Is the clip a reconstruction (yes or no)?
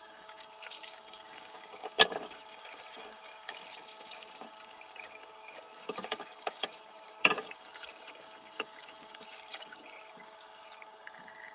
yes